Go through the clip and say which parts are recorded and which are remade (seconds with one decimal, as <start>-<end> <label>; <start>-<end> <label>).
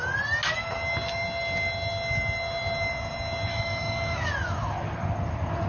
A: 0.0-3.5 recorded; 3.5-4.3 remade; 4.3-5.7 recorded